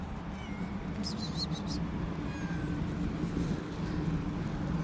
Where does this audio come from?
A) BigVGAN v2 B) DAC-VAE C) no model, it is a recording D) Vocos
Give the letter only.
C